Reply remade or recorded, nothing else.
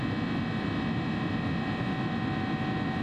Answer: recorded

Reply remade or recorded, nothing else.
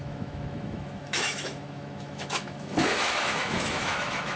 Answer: remade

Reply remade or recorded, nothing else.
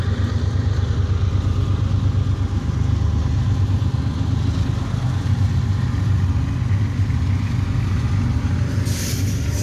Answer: recorded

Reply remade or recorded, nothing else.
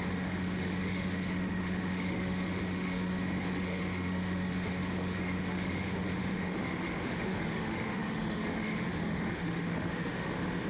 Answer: remade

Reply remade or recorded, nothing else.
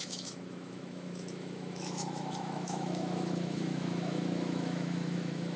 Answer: remade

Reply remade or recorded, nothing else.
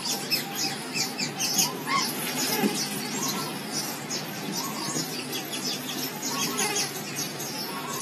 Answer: recorded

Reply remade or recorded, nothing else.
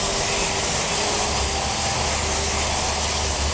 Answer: recorded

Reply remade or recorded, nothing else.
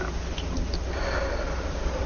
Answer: recorded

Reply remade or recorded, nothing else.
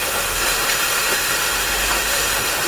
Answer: remade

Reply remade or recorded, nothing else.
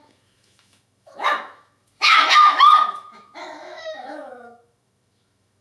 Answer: remade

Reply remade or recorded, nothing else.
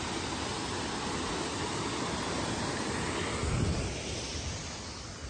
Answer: recorded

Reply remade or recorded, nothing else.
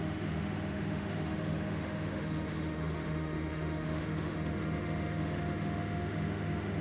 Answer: remade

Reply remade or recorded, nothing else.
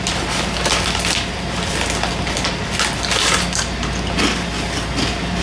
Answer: recorded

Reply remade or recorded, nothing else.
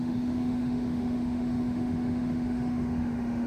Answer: remade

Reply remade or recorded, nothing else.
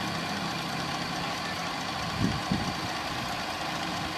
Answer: recorded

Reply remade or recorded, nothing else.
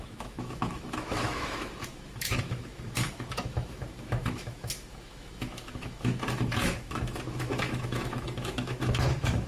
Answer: remade